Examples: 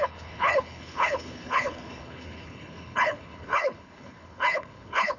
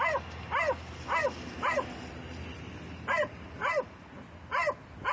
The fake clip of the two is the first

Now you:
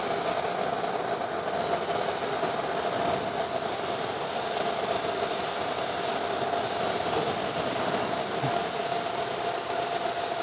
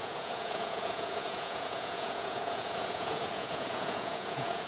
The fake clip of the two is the second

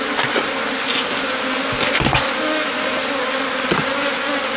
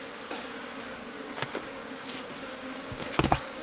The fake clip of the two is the second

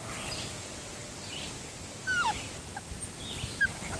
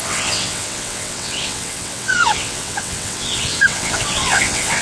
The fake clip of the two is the second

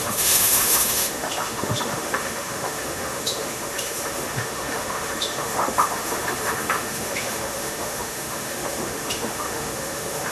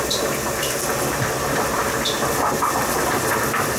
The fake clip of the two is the first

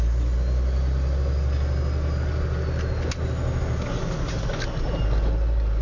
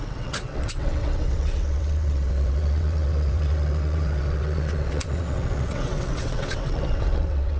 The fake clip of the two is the second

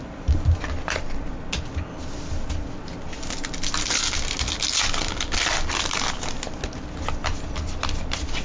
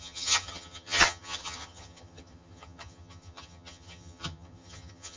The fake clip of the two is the second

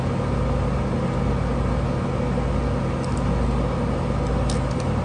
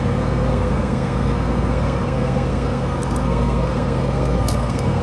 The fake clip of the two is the second